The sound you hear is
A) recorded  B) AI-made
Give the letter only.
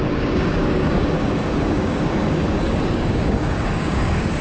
B